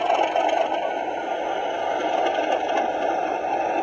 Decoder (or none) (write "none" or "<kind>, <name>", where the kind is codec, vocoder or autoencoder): none